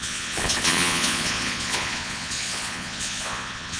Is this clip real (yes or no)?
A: no